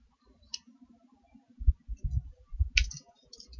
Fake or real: real